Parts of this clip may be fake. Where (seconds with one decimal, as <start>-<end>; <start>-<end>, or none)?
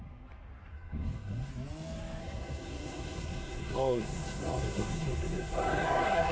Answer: 0.7-1.5; 2.2-6.3